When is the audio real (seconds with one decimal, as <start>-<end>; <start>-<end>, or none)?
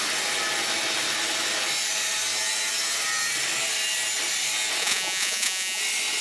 0.0-4.8; 5.8-6.2